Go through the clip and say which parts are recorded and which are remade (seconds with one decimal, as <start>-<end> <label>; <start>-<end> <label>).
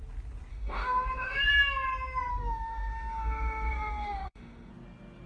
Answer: 0.0-0.5 recorded; 0.5-1.5 remade; 1.5-2.3 recorded; 2.3-4.7 remade; 4.7-5.3 recorded